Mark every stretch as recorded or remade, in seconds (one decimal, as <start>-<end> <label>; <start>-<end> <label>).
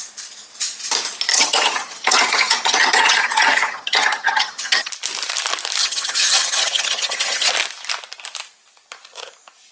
0.0-1.3 recorded; 1.3-4.9 remade; 4.9-5.8 recorded; 5.8-7.5 remade; 7.5-9.7 recorded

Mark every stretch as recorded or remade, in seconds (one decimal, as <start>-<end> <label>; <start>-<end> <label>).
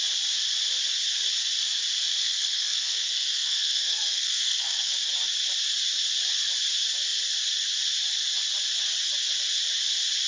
0.0-2.1 recorded; 2.1-4.9 remade; 4.9-10.3 recorded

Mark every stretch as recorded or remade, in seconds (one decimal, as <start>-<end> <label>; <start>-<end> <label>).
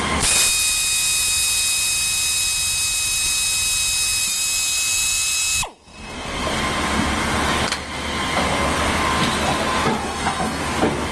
0.0-10.0 recorded; 10.0-10.6 remade; 10.6-11.1 recorded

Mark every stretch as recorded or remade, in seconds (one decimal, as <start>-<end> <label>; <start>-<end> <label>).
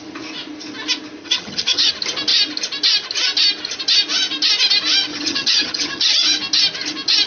0.0-1.2 recorded; 1.2-1.9 remade; 1.9-5.1 recorded; 5.1-6.2 remade; 6.2-7.3 recorded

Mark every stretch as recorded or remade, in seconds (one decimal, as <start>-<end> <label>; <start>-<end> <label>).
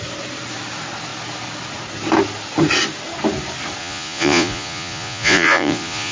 0.0-3.8 recorded; 3.8-6.1 remade